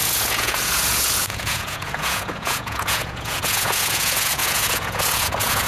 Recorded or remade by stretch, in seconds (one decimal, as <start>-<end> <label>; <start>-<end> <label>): 0.0-5.7 remade